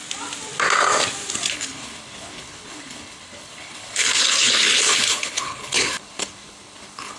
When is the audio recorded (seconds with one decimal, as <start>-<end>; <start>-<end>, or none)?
0.0-1.5